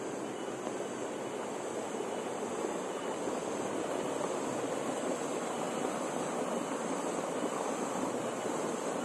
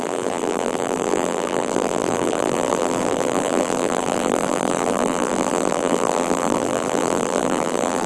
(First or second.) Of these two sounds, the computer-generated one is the second